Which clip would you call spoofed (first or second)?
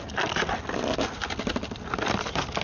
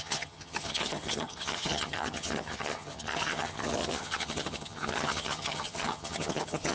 second